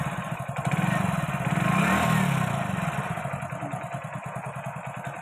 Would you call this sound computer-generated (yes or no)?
no